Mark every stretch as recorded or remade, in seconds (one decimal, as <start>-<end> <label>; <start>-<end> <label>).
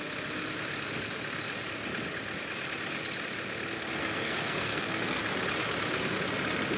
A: 0.0-4.0 recorded; 4.0-5.2 remade; 5.2-6.8 recorded